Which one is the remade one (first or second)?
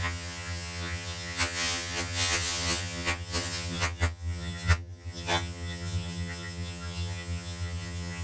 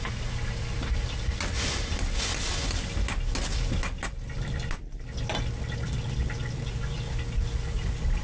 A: first